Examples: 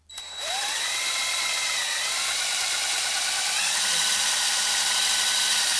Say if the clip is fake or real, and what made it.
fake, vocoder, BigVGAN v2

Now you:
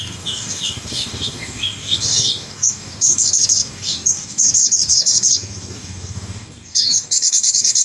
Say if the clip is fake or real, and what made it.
fake, codec, DAC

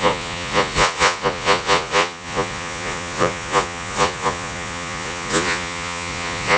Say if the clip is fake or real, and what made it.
fake, vocoder, Vocos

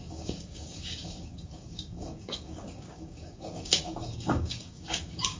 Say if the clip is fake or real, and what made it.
fake, codec, DAC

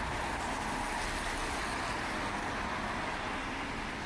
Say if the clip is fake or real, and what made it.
real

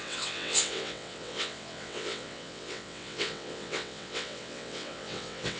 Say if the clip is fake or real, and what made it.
fake, vocoder, WaveNeXt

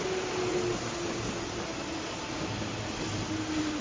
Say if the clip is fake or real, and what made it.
real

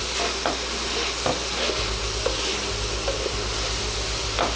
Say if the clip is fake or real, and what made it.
real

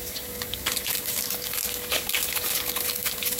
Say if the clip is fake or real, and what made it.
fake, codec, DAC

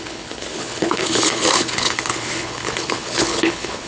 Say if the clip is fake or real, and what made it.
fake, codec, HILCodec